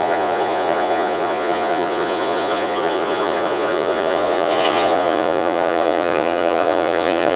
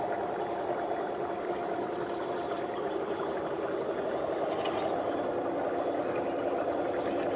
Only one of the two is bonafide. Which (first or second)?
second